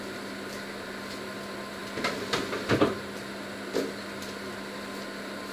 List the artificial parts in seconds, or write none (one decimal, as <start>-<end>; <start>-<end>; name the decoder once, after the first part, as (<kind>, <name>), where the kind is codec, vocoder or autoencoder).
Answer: none